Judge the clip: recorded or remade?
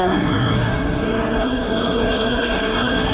remade